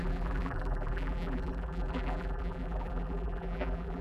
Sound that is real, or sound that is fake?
fake